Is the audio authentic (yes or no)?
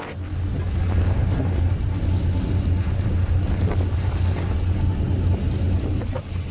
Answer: yes